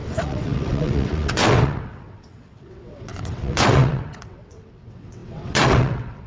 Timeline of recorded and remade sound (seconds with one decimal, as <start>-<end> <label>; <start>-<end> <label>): 0.0-6.3 remade